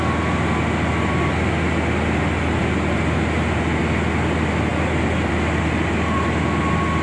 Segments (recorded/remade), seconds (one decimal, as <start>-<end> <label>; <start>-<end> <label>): 0.0-7.0 recorded